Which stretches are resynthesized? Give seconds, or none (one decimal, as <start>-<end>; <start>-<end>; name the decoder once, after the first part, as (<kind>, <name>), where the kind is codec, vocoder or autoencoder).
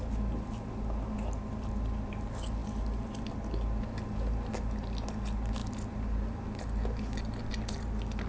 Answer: none